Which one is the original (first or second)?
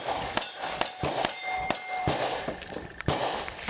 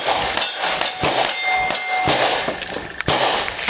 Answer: second